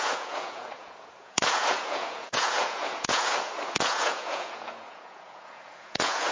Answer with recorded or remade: remade